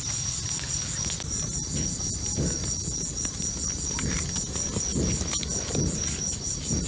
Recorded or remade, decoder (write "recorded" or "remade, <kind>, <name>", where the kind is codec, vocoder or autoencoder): recorded